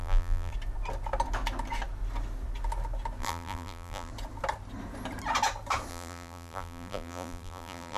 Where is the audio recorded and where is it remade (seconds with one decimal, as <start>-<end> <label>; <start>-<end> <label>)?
0.0-0.5 remade; 0.5-3.2 recorded; 3.2-4.1 remade; 4.1-5.9 recorded; 5.9-8.0 remade